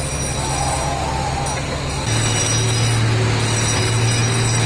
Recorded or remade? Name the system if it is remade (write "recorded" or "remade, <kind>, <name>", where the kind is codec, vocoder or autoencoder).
recorded